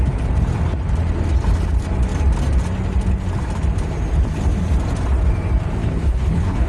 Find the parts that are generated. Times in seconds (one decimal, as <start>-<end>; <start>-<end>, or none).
5.8-6.7